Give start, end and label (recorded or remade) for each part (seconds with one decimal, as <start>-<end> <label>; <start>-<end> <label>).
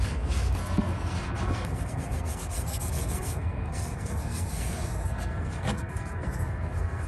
0.0-7.1 remade